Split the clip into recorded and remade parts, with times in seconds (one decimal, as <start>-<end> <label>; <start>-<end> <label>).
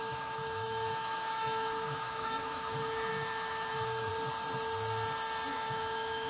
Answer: 0.0-4.1 remade; 4.1-5.5 recorded; 5.5-6.3 remade